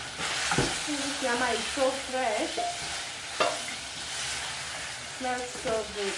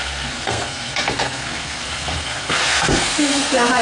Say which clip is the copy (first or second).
second